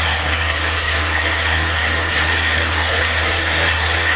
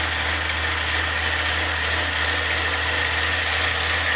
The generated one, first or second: first